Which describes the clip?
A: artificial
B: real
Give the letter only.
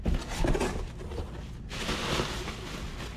B